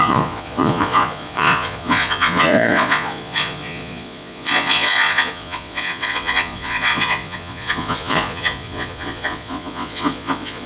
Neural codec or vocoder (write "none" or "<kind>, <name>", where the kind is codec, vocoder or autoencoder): vocoder, Vocos